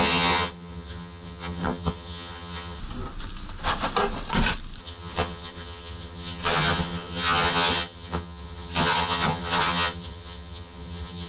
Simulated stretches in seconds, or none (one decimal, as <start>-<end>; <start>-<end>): 0.0-2.8; 4.8-11.3